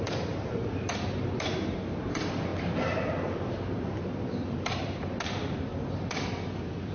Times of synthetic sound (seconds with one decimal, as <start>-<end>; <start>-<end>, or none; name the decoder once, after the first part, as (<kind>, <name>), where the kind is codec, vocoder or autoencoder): 0.0-2.5 (vocoder, BigVGAN v2); 3.5-5.7; 6.5-6.9